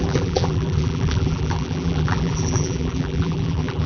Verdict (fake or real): fake